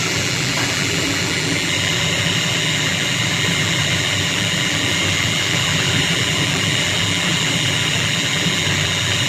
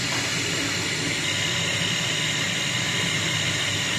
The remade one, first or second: first